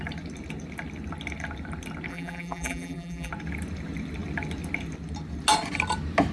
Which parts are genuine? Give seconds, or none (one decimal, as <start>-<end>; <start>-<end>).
0.0-2.1; 3.3-6.3

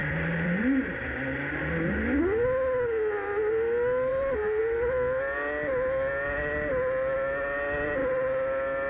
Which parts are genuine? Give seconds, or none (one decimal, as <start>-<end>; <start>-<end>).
1.6-4.1; 4.6-8.9

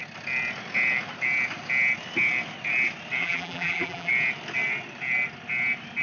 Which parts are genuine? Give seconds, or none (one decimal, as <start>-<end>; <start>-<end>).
0.0-3.2; 4.1-6.0

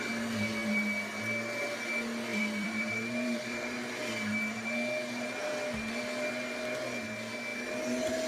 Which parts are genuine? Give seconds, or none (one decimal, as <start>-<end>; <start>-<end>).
0.0-2.3; 4.0-8.3